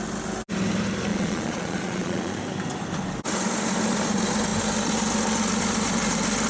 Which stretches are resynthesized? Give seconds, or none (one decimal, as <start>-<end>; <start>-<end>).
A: 1.1-2.4